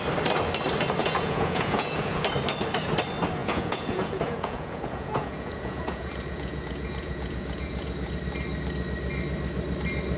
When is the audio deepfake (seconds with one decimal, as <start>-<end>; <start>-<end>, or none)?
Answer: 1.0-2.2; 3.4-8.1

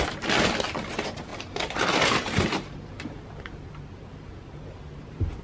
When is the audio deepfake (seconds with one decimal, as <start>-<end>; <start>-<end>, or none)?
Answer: 1.3-3.3; 4.1-5.4

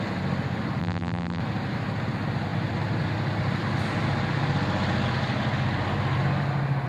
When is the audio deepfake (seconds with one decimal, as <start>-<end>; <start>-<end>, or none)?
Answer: 0.8-1.4

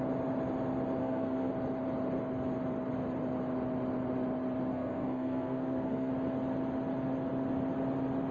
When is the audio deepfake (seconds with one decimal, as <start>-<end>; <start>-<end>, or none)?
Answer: 1.0-1.5; 4.7-6.1